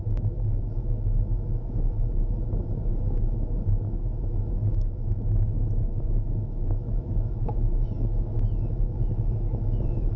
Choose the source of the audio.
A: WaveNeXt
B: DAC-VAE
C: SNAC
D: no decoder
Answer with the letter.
B